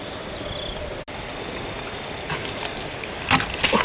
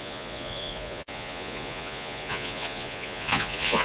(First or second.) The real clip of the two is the first